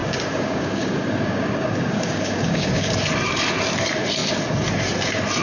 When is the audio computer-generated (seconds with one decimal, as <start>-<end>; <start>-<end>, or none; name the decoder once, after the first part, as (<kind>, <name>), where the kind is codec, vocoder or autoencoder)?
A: 0.0-2.9 (codec, DAC)